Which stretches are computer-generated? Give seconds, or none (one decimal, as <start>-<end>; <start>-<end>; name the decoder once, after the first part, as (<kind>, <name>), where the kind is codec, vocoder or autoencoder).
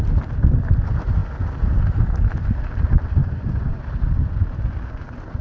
3.2-3.8 (vocoder, Vocos)